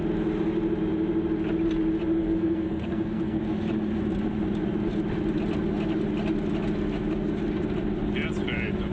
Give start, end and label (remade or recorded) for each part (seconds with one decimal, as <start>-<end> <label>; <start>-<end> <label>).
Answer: 0.0-2.2 recorded; 2.2-3.4 remade; 3.4-8.9 recorded